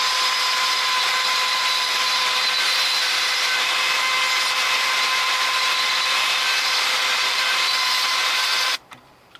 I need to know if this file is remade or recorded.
remade